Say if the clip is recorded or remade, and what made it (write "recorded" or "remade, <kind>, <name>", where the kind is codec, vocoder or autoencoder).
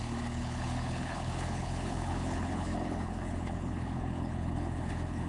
remade, codec, HILCodec